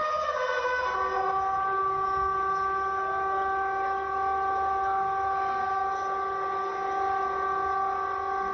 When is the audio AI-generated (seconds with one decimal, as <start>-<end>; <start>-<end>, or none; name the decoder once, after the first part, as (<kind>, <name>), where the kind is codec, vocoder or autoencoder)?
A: none